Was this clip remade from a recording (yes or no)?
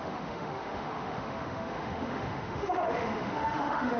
yes